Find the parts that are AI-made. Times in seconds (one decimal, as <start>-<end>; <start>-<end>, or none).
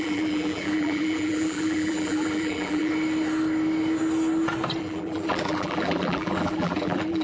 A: 0.0-2.9; 4.8-7.2